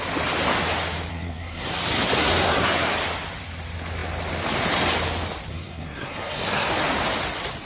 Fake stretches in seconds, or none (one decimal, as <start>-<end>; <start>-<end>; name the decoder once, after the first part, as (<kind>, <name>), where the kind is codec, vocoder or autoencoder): 1.1-1.7 (codec, SNAC); 2.2-2.9; 5.5-6.7